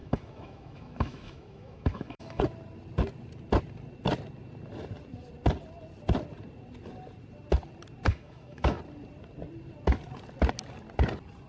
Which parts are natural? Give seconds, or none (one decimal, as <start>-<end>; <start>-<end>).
2.4-8.1; 8.8-11.5